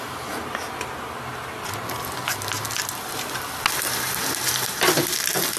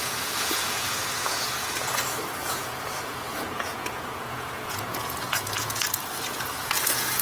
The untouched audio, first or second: first